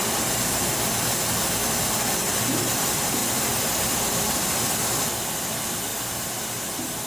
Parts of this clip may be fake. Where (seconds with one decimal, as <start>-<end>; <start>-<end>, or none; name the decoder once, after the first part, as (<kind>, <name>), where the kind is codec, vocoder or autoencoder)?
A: none